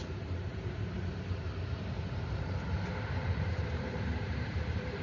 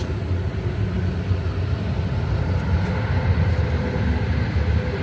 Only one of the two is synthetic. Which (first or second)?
first